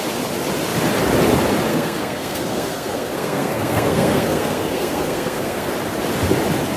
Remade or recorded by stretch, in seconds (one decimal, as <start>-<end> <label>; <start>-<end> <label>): 0.0-1.7 recorded; 1.7-5.7 remade; 5.7-6.8 recorded